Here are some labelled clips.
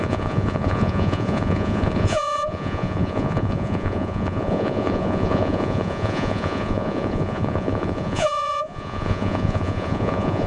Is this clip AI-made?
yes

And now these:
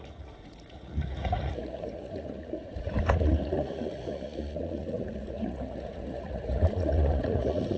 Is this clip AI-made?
yes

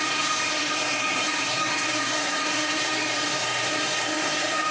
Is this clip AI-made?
yes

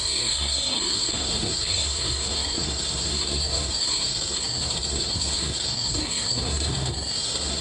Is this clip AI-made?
yes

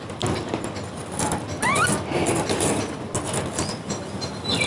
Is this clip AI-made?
no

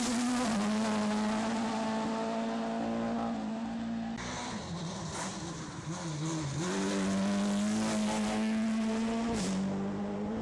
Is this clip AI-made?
no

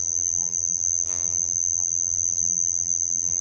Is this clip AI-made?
yes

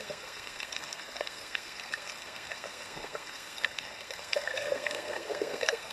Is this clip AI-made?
yes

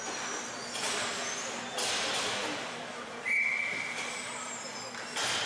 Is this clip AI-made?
no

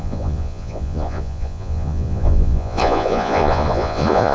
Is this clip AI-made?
yes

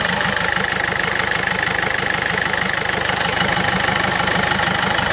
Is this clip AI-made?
yes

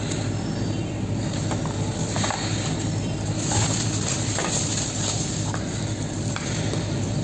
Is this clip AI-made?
yes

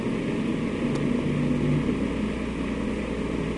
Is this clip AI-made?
no